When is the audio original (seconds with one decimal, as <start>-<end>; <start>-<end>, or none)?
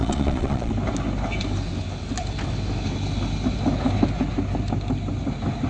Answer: 0.7-5.7